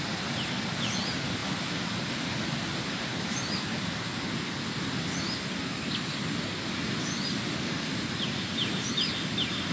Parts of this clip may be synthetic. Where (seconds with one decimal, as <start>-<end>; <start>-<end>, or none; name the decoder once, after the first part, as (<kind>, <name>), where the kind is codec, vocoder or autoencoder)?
none